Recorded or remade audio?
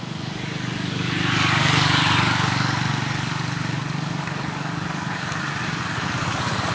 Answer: remade